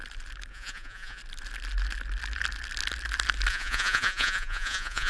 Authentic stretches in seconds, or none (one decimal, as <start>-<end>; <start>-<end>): 0.0-0.5; 1.2-3.5